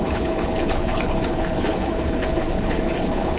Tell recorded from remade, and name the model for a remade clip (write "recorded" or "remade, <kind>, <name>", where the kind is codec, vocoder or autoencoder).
remade, codec, HILCodec